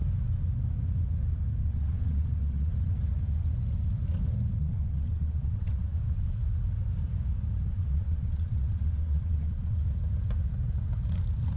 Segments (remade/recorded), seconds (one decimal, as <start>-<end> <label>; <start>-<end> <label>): 0.0-1.6 recorded; 1.6-2.7 remade; 2.7-4.6 recorded; 4.6-6.4 remade; 6.4-7.7 recorded; 7.7-9.8 remade; 9.8-11.6 recorded